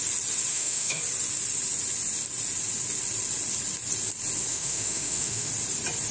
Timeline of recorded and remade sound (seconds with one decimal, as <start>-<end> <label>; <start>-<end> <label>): 0.0-0.5 recorded; 0.5-1.0 remade; 1.0-4.5 recorded; 4.5-5.5 remade; 5.5-6.1 recorded